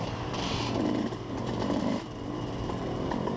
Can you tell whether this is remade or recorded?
remade